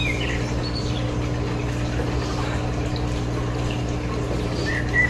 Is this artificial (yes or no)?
no